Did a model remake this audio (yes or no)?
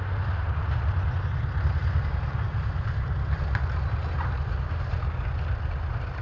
no